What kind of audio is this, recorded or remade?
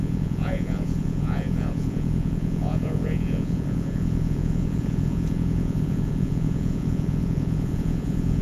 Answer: remade